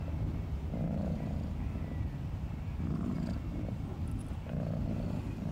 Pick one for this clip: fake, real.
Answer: real